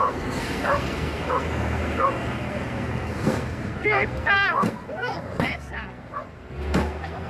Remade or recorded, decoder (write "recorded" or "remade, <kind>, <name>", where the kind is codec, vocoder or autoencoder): remade, codec, SNAC